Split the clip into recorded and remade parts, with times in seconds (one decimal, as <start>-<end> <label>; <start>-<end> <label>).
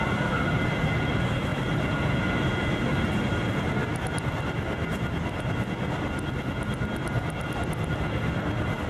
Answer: 0.0-8.9 recorded